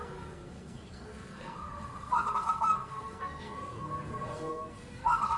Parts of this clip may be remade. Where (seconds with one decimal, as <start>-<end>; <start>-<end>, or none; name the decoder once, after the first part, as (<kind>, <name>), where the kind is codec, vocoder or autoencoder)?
0.0-5.4 (codec, SNAC)

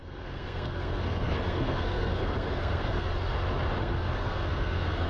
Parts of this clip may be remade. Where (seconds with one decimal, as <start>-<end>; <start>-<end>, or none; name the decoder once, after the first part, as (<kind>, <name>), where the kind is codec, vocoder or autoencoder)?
0.0-3.1 (codec, SNAC); 3.8-5.1

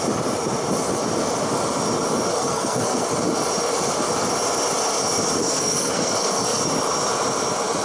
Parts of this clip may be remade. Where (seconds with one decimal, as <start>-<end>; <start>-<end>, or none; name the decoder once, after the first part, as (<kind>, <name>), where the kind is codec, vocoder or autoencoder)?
2.3-3.1 (codec, SNAC); 5.4-6.6

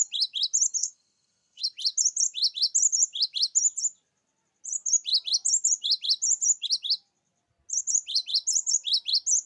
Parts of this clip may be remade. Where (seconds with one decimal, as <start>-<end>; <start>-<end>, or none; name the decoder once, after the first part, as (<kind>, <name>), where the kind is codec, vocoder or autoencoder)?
0.8-1.6 (codec, SNAC)

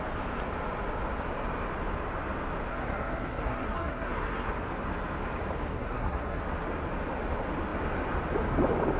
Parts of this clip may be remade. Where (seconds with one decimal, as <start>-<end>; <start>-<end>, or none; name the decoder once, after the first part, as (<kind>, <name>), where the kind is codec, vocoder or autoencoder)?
2.7-4.5 (codec, SNAC); 5.7-6.4